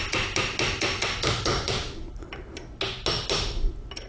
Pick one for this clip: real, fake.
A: real